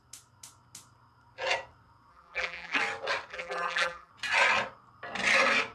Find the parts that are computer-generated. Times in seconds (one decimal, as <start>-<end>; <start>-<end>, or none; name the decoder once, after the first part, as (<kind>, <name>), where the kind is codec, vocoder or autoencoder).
2.1-2.8 (vocoder, BigVGAN v2); 3.3-4.1